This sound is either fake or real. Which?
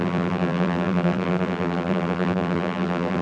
fake